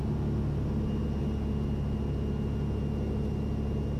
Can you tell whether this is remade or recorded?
recorded